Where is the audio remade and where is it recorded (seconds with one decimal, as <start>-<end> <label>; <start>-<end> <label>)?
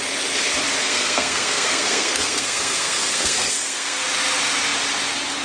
0.0-0.8 recorded; 0.8-4.0 remade; 4.0-5.4 recorded